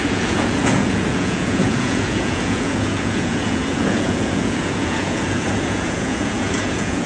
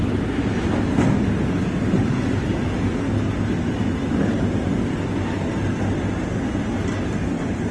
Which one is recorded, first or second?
second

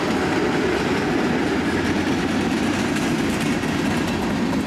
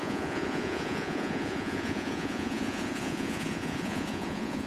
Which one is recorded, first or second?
first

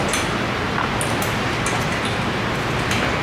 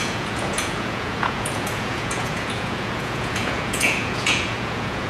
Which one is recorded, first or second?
first